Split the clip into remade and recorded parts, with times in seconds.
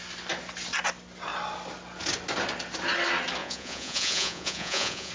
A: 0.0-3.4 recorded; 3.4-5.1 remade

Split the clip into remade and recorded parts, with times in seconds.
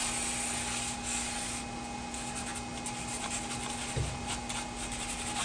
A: 0.0-5.4 recorded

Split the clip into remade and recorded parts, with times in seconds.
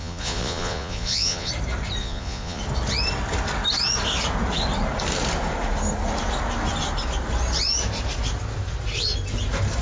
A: 0.0-1.5 remade; 1.5-2.0 recorded; 2.0-2.6 remade; 2.6-9.8 recorded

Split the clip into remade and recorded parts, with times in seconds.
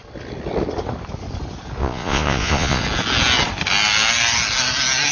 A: 0.0-1.8 recorded; 1.8-2.8 remade; 2.8-5.1 recorded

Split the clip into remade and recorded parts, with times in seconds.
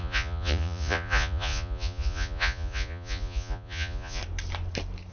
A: 0.0-4.2 remade; 4.2-5.1 recorded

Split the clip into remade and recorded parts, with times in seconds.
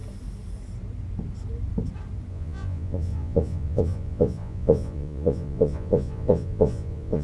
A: 0.0-2.3 recorded; 2.3-7.2 remade